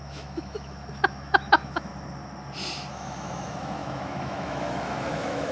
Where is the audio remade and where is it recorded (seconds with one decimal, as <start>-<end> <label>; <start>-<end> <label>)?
0.0-1.9 remade; 1.9-2.9 recorded; 2.9-5.5 remade